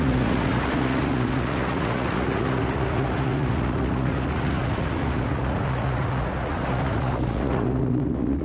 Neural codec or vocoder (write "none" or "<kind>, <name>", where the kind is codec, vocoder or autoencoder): vocoder, Vocos